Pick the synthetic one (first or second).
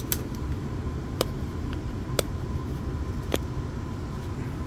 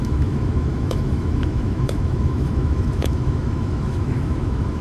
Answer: second